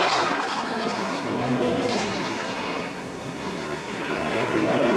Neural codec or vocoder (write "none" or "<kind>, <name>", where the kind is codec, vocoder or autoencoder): codec, SNAC